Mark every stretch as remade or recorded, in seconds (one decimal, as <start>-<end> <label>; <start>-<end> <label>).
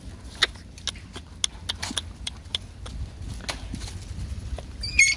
0.0-5.2 recorded